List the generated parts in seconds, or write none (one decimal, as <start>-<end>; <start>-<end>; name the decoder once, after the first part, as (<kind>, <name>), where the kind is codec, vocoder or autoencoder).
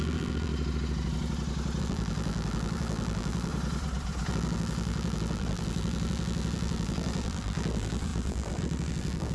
0.0-0.5 (vocoder, BigVGAN v2); 1.8-3.5; 4.3-9.3